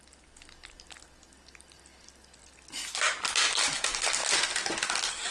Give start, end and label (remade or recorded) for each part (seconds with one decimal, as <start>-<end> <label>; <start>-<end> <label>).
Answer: 0.0-5.3 recorded